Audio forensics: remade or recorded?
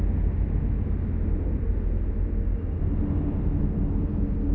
recorded